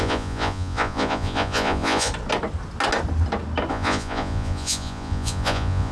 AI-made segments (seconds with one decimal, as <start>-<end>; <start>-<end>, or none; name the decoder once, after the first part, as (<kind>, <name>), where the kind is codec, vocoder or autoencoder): 0.0-2.1 (vocoder, Vocos); 3.7-5.9